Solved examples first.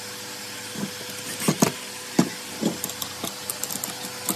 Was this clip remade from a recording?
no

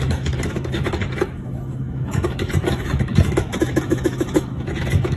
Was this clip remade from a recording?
yes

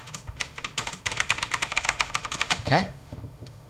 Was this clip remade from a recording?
yes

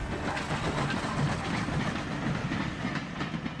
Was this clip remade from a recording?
no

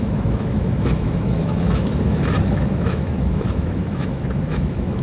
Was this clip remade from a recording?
yes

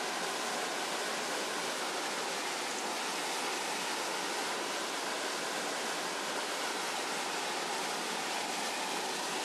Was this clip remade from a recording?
no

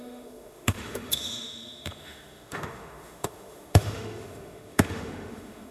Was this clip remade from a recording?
yes